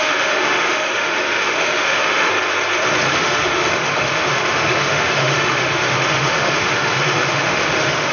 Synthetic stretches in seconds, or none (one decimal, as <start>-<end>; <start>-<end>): 0.0-2.3; 3.1-8.1